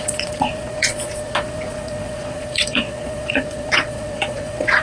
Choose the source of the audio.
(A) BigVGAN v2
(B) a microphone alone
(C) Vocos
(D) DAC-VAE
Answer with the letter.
C